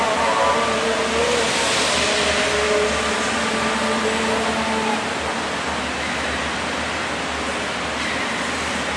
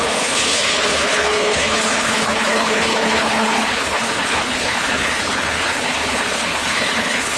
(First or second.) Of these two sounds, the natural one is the first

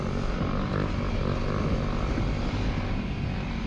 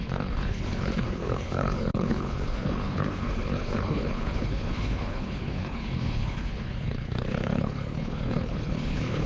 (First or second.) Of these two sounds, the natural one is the first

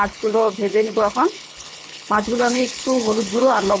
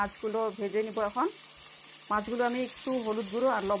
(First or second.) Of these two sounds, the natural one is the second